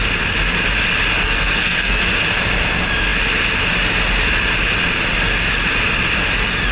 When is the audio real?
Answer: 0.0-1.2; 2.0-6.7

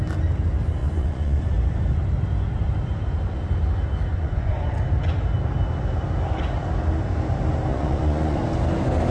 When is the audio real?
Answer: 0.0-0.8; 1.4-4.1; 4.8-7.7; 8.4-9.1

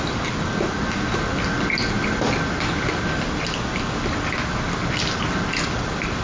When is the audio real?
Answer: 0.0-6.2